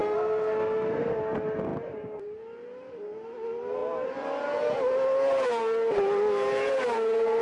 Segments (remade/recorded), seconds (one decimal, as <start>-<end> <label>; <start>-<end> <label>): 0.0-1.2 remade; 1.2-7.4 recorded